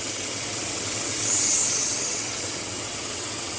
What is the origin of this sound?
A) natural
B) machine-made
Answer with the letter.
B